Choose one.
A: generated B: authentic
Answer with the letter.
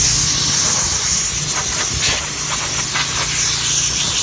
B